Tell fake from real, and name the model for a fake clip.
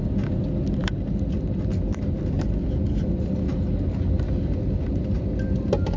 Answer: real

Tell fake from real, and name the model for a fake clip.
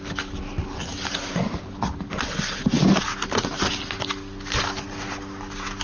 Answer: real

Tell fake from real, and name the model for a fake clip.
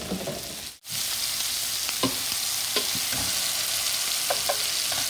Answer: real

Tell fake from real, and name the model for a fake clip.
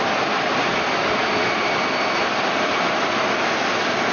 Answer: fake, vocoder, BigVGAN v2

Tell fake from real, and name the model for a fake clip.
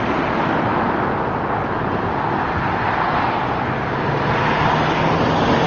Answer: real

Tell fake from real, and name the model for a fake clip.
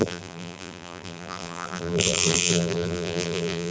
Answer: fake, vocoder, BigVGAN v2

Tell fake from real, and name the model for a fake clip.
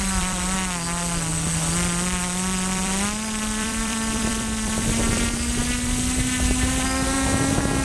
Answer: fake, vocoder, BigVGAN v2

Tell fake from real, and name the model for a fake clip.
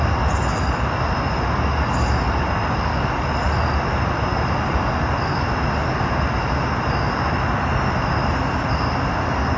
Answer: real